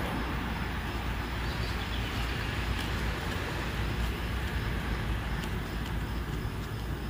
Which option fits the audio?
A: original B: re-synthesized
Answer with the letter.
A